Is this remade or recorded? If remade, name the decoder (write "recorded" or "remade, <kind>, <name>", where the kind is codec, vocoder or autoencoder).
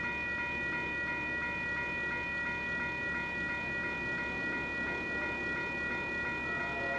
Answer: recorded